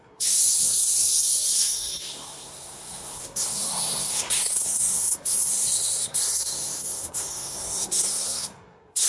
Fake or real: fake